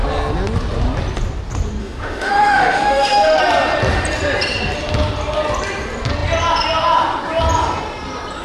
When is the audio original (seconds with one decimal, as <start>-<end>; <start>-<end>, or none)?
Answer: 0.0-1.8; 3.4-8.4